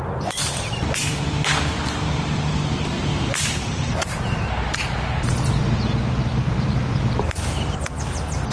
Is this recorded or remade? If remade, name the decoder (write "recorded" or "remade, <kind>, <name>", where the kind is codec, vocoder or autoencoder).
remade, vocoder, BigVGAN v2